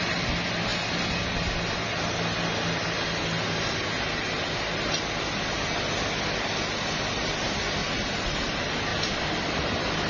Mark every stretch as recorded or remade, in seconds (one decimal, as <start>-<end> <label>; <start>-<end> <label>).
0.0-0.7 remade; 0.7-5.8 recorded; 5.8-7.8 remade; 7.8-8.4 recorded; 8.4-10.1 remade